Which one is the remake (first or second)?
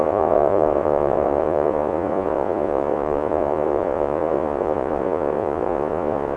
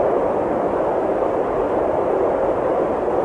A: first